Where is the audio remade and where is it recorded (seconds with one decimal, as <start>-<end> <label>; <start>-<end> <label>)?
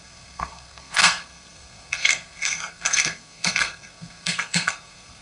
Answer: 0.0-5.2 remade